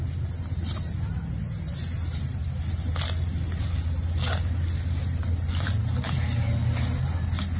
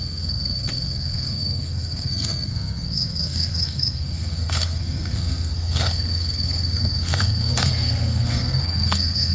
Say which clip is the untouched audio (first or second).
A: first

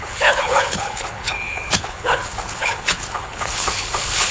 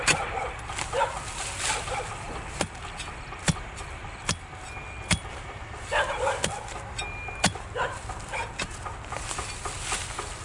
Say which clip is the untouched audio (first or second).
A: second